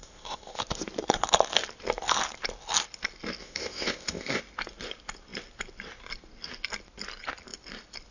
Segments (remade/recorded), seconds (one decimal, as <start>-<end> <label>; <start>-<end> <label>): 0.0-0.6 remade; 0.6-3.4 recorded; 3.4-4.4 remade; 4.4-8.1 recorded